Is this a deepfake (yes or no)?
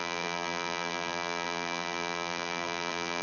yes